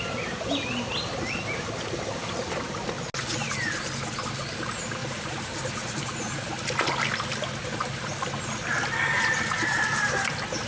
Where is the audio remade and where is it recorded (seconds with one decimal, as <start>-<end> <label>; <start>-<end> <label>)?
0.0-5.0 recorded; 5.0-6.0 remade; 6.0-7.6 recorded; 7.6-8.1 remade; 8.1-10.7 recorded